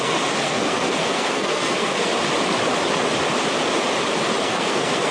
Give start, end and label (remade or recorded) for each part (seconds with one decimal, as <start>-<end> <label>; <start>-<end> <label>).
0.0-2.1 remade; 2.1-4.4 recorded; 4.4-5.1 remade